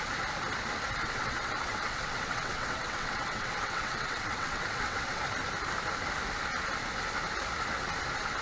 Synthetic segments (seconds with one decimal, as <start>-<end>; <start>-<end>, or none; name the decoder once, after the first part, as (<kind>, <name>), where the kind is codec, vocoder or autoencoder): 1.0-5.2 (vocoder, WaveNeXt)